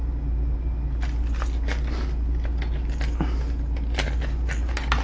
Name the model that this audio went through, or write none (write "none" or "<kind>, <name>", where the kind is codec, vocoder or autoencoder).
none